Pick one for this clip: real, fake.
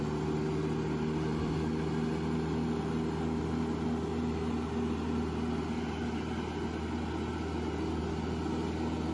real